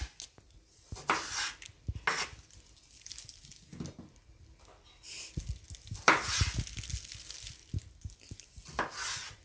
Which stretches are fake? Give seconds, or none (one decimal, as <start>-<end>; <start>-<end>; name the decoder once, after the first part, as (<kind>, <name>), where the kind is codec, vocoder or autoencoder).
none